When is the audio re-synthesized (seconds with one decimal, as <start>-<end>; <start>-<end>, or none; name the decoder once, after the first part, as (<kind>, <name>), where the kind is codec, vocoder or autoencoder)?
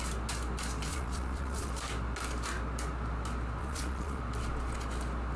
0.9-1.7 (vocoder, Vocos); 3.6-4.2